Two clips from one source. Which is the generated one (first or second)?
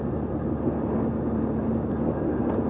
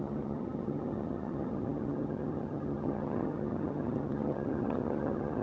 second